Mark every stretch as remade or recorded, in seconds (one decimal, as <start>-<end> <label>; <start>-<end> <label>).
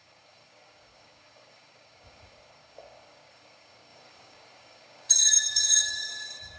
0.0-6.6 remade